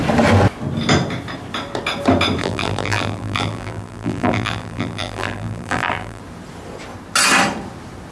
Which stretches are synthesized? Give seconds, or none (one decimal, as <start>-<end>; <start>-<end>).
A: 2.4-6.2